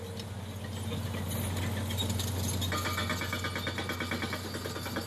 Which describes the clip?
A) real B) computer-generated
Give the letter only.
A